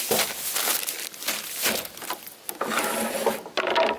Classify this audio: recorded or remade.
recorded